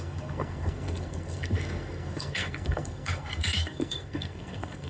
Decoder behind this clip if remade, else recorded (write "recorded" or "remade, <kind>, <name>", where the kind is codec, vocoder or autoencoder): remade, codec, SNAC